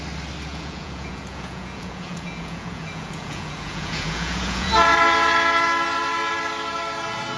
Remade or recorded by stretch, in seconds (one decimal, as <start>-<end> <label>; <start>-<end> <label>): 0.0-0.5 recorded; 0.5-4.7 remade; 4.7-7.4 recorded